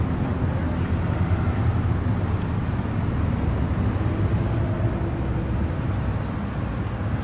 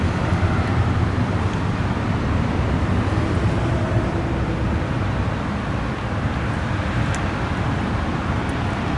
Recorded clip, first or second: first